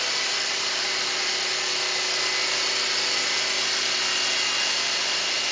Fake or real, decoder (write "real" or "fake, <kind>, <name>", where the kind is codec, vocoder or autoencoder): real